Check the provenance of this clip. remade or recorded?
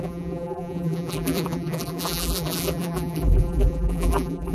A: remade